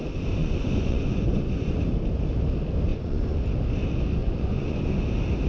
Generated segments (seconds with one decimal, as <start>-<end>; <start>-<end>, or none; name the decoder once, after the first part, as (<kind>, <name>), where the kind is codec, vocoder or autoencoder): 0.4-1.8 (vocoder, Vocos); 2.9-3.4; 4.2-5.0